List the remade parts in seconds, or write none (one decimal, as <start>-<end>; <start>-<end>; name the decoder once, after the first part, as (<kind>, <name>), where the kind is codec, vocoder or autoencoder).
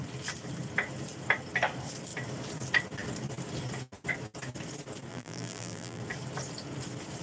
5.1-6.0 (vocoder, BigVGAN v2)